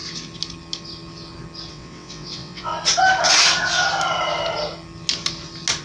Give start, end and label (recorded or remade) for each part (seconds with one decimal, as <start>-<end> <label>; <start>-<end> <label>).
0.0-1.7 recorded; 1.7-2.7 remade; 2.7-5.8 recorded